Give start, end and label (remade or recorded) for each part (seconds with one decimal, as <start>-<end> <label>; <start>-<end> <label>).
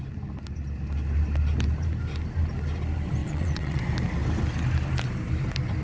0.0-3.2 recorded; 3.2-3.8 remade; 3.8-5.8 recorded